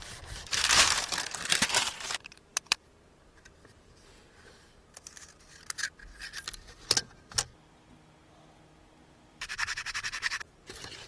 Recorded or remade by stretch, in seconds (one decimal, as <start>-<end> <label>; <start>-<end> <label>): 0.0-6.0 remade; 6.0-9.1 recorded; 9.1-11.1 remade